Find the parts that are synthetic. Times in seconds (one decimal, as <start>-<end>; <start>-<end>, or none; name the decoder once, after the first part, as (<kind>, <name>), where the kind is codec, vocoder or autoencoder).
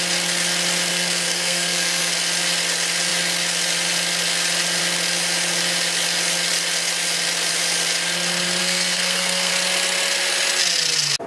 0.9-2.1 (codec, SNAC); 8.6-9.5